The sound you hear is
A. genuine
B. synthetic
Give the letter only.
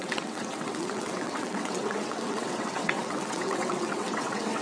B